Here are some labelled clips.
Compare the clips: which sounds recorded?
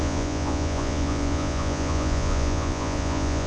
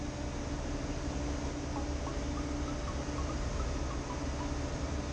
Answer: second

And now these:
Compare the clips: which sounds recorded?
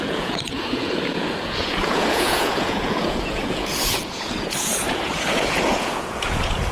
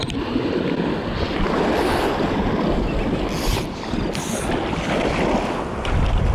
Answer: second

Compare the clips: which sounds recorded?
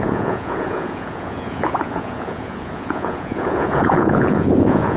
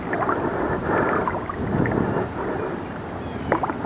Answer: second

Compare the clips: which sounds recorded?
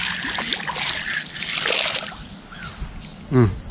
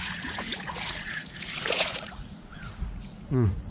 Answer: first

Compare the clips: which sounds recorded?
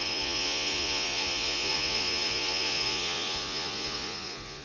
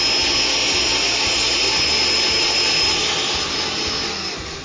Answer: second